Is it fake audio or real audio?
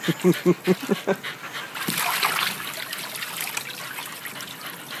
real